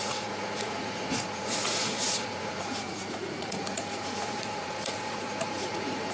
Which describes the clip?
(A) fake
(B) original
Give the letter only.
A